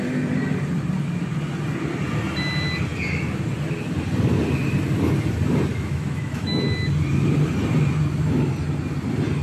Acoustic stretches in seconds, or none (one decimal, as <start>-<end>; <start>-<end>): 0.0-5.7; 6.6-9.4